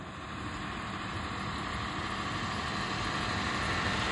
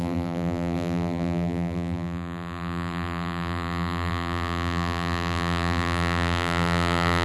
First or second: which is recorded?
first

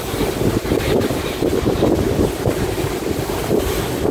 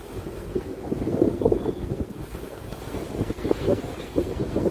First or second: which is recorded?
first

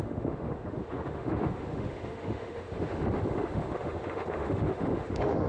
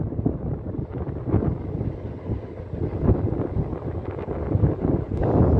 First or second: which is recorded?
second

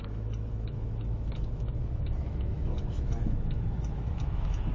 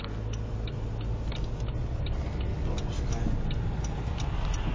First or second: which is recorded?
second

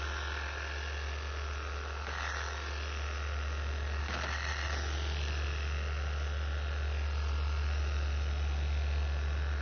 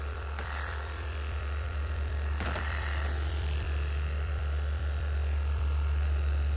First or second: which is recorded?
first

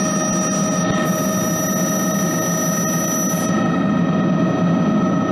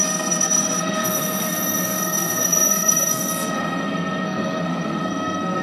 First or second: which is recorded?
first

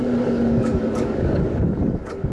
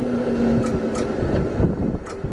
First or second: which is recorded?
second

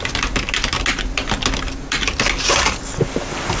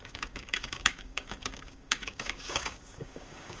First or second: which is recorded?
first